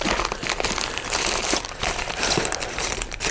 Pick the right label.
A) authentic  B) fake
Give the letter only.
A